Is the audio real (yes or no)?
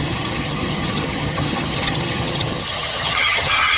no